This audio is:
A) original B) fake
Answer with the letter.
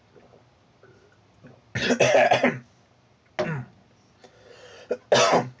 A